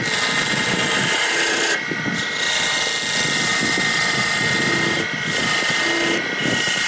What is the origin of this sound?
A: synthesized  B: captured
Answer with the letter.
B